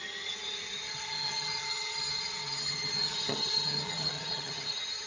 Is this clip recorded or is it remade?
remade